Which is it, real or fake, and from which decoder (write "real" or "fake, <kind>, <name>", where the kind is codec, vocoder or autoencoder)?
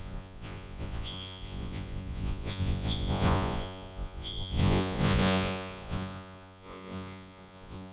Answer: fake, vocoder, Vocos